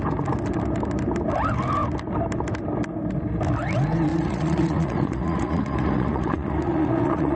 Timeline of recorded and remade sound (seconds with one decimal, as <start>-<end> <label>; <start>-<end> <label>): 0.0-4.1 recorded; 4.1-7.4 remade